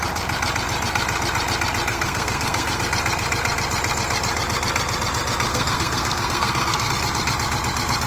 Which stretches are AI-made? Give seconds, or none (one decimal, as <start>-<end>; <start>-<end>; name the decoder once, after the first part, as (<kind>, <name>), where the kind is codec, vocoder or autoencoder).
1.9-2.8 (codec, SNAC); 5.5-6.9